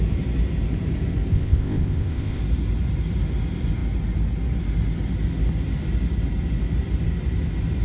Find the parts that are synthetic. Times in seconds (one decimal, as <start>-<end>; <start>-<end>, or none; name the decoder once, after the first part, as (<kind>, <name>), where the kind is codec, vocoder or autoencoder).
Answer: 1.3-2.4 (codec, ZipCodec)